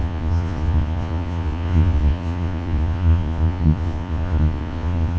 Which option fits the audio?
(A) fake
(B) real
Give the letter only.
A